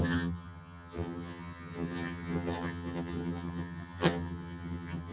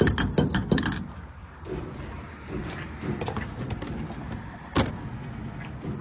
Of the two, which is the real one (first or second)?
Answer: second